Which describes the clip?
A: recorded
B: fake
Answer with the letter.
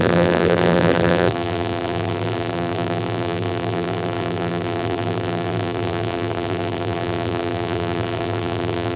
B